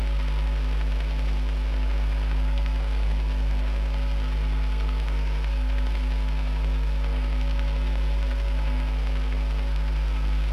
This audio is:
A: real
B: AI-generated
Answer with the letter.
B